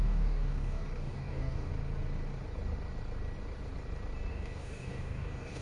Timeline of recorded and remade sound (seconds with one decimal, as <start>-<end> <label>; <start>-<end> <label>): 0.0-1.7 remade; 1.7-4.3 recorded; 4.3-5.6 remade